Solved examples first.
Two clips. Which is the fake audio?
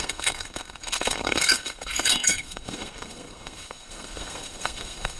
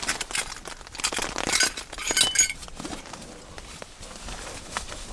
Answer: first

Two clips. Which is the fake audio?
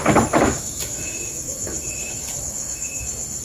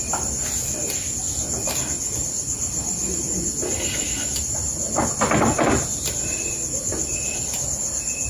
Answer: first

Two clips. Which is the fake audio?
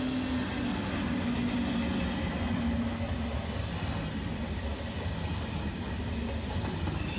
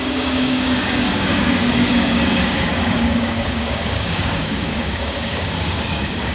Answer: second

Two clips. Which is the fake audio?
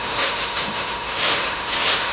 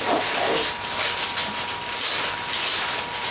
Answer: first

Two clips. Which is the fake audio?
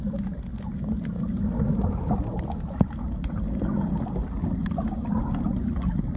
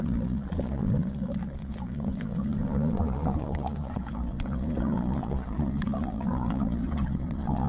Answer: second